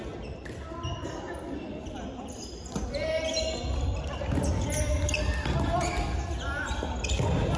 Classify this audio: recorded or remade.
recorded